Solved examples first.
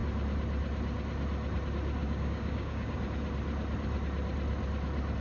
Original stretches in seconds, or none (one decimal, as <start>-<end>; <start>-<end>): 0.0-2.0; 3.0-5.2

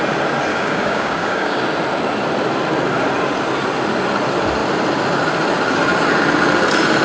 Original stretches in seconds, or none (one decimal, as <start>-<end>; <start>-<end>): 0.0-0.5; 1.6-7.0

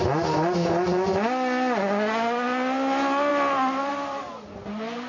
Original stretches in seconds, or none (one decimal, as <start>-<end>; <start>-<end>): 0.0-5.1

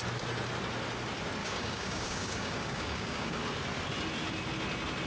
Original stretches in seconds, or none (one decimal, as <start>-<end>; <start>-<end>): 0.0-1.4; 3.4-5.1

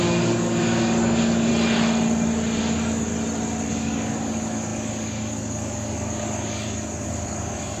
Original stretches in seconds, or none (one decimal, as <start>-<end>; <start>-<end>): 1.5-2.6; 3.1-3.7

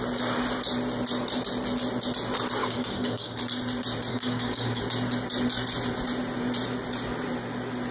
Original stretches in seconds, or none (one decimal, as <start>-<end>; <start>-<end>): 0.0-2.6; 3.4-4.1; 4.8-7.9

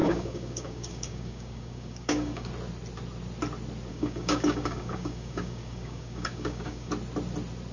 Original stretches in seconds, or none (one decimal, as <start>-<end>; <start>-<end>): 2.5-3.9; 6.9-7.7

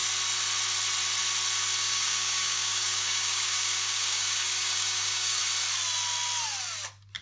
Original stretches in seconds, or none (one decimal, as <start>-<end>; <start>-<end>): 0.0-1.8; 5.4-7.2